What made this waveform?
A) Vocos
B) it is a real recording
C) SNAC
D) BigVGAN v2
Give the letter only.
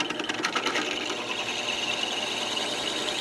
B